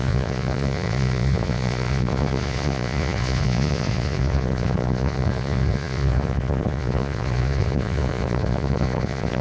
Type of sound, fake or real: fake